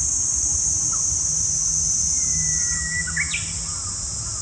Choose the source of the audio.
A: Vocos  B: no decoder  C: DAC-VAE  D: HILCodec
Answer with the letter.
B